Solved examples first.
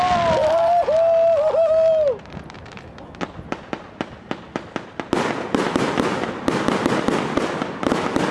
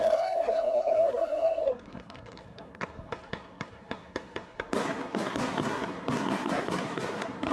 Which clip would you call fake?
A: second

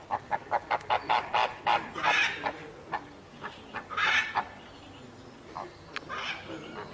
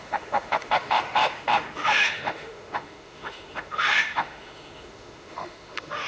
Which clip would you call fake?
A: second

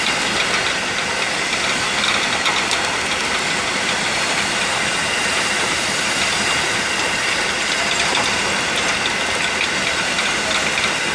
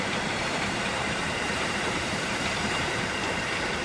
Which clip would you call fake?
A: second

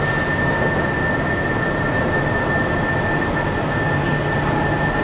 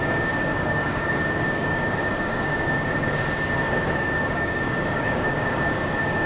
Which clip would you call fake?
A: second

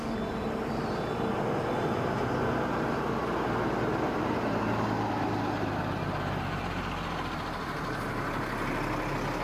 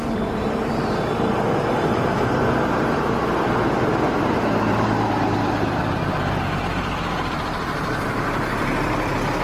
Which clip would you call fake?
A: second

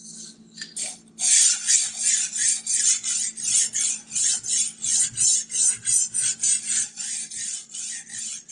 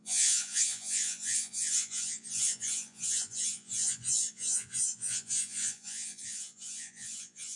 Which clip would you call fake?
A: second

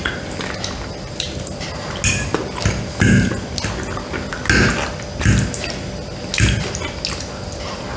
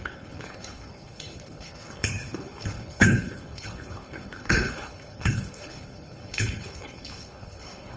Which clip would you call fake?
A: second